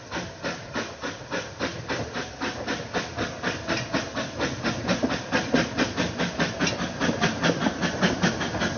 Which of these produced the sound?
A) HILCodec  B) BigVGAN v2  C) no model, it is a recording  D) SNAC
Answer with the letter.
C